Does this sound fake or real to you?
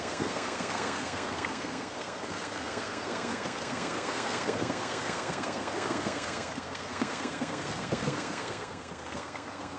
fake